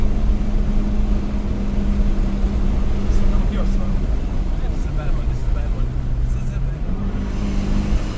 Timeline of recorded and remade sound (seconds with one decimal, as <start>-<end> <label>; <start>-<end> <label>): 0.0-8.2 recorded